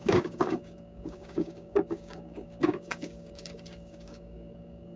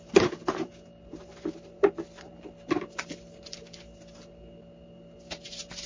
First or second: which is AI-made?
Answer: first